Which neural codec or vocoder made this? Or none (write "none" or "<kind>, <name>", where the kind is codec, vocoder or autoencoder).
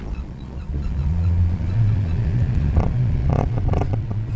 vocoder, Vocos